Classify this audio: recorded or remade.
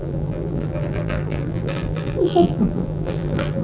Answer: remade